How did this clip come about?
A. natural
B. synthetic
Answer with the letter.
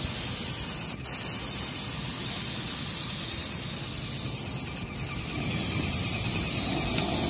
A